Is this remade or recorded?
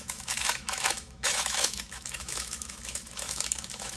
remade